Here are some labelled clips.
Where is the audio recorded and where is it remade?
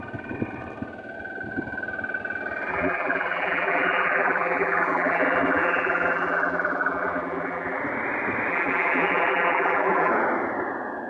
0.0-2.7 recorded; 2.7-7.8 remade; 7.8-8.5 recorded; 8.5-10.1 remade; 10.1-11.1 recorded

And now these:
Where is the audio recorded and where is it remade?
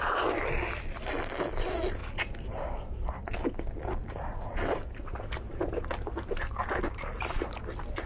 0.0-6.6 recorded; 6.6-7.6 remade; 7.6-8.1 recorded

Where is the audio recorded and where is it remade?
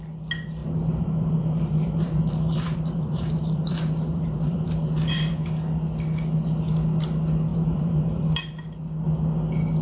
0.0-0.6 recorded; 0.6-5.3 remade; 5.3-7.5 recorded; 7.5-8.5 remade; 8.5-9.8 recorded